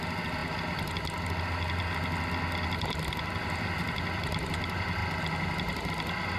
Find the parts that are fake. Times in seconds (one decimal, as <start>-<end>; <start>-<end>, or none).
none